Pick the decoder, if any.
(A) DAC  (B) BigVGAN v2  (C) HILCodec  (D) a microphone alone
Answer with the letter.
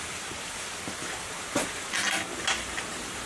D